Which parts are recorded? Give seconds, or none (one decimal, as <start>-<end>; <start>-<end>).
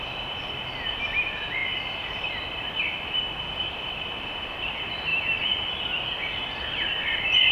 0.0-7.5